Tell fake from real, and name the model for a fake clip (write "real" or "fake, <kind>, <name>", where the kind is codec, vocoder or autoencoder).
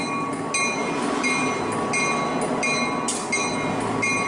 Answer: real